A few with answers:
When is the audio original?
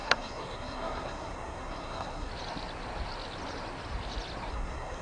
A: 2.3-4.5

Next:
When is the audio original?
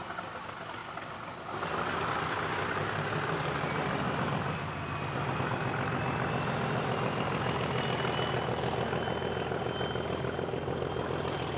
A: 0.0-11.6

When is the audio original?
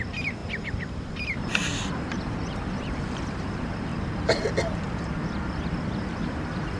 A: 3.9-5.9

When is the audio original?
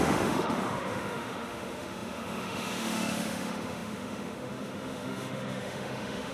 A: none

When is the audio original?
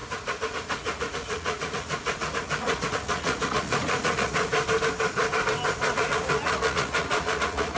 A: 4.5-5.9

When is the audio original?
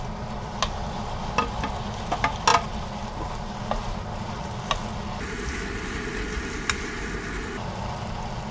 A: 0.0-8.5